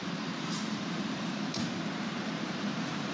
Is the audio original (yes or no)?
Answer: no